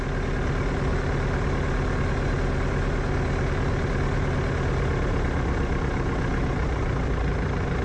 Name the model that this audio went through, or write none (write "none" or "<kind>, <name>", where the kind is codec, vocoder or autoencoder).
none